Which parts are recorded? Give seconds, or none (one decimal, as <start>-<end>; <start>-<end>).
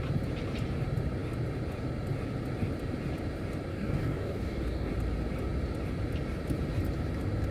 0.0-3.7; 4.9-7.5